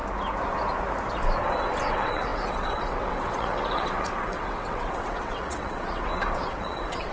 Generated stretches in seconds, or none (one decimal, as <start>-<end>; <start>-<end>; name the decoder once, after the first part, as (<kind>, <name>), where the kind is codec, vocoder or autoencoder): 1.9-7.1 (vocoder, WaveNeXt)